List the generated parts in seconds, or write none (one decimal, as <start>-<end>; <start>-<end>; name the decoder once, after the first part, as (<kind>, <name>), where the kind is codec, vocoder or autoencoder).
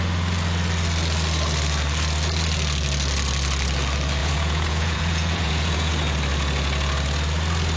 4.2-5.9 (vocoder, Vocos)